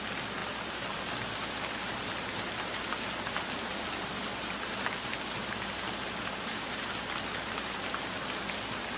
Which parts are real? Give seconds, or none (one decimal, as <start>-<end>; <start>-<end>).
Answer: 0.0-9.0